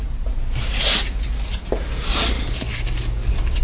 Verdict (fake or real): real